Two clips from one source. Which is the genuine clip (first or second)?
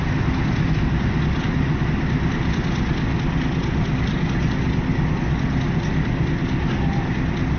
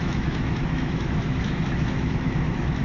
first